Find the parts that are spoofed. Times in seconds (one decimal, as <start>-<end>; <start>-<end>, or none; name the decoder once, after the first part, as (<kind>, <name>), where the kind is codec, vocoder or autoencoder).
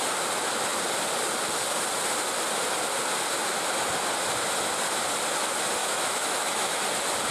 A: 5.8-6.8 (autoencoder, DAC-VAE)